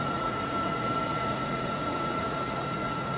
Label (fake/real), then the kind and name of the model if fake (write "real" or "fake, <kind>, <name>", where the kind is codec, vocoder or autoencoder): fake, vocoder, Vocos